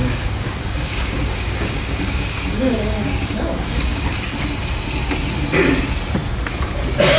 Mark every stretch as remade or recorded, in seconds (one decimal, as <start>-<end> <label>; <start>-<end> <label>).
0.0-4.1 remade; 4.1-7.2 recorded